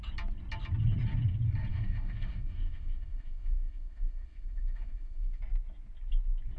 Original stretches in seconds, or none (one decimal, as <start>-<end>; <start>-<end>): 0.0-1.7; 5.4-6.6

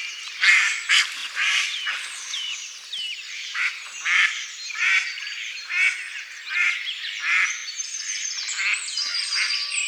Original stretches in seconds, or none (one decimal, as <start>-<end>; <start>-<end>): 0.0-1.2; 3.7-4.9; 5.4-6.1; 7.1-9.9

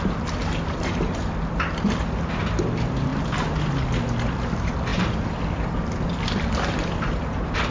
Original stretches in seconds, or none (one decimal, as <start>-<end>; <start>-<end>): 0.0-7.7

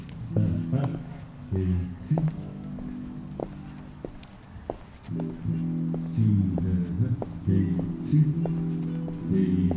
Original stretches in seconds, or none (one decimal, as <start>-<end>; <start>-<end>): 3.4-7.4; 8.1-9.8

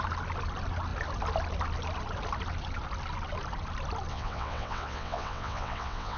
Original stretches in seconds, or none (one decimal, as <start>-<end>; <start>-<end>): 0.0-4.1

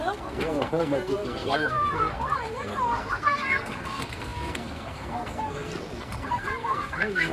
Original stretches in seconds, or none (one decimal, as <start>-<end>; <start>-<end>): none

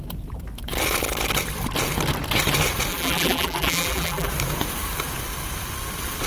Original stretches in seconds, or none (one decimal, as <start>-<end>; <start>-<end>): 0.0-2.9; 4.3-6.3